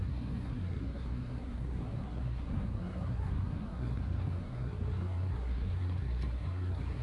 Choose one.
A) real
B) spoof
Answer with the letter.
B